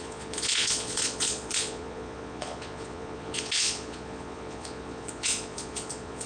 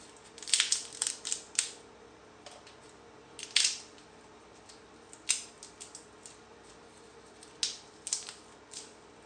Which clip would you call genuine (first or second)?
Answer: second